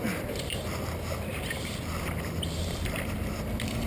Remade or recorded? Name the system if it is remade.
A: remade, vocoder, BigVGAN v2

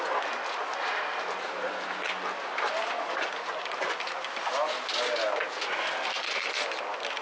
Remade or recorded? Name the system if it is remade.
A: recorded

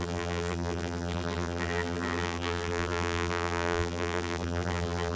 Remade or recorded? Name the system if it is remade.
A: remade, vocoder, BigVGAN v2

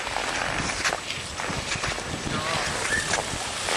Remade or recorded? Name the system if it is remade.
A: recorded